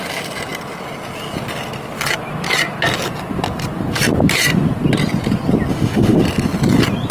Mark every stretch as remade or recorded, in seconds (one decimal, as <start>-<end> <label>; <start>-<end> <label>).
0.0-5.7 recorded; 5.7-6.2 remade; 6.2-7.1 recorded